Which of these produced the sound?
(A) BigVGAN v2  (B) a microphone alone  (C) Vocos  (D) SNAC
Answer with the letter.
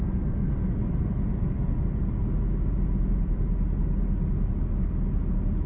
B